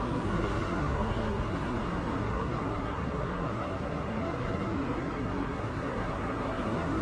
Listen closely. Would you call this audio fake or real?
fake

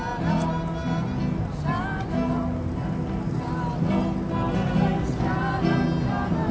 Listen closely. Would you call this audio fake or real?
real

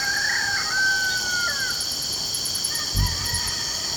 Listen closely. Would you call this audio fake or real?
real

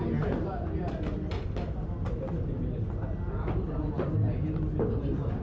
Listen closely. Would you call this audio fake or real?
real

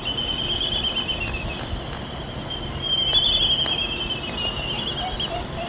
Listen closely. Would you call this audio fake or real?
real